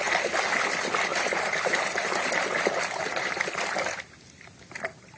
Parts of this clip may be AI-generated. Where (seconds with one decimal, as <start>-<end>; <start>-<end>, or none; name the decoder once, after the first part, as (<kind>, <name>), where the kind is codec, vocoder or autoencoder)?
1.1-3.6 (vocoder, BigVGAN v2)